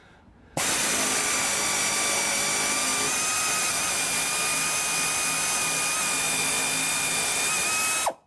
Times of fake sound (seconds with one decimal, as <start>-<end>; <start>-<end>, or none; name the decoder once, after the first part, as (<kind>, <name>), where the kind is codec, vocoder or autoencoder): none